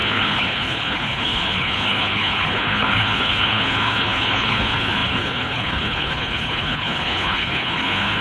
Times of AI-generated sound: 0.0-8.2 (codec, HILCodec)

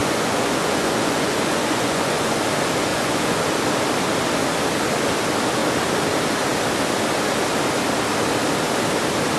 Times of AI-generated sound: 0.0-2.4 (vocoder, Vocos); 2.9-3.4